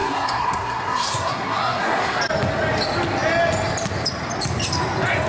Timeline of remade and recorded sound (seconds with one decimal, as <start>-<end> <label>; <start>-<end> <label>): 0.0-2.2 remade; 2.2-5.3 recorded